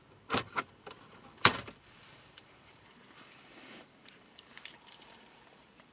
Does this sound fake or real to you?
fake